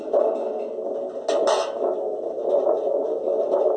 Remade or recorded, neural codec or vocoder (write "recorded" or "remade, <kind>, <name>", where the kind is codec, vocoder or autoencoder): recorded